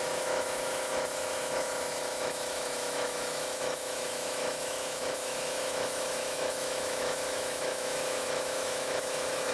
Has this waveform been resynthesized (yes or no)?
yes